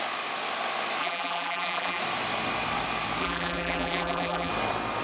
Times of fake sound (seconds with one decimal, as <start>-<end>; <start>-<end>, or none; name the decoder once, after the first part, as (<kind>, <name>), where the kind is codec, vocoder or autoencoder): 1.0-2.0 (vocoder, BigVGAN v2); 3.2-4.5